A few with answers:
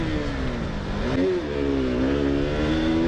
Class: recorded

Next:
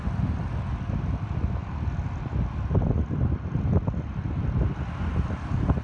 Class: recorded